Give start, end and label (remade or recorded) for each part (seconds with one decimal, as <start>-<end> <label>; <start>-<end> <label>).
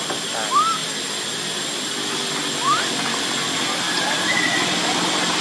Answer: 0.0-5.4 recorded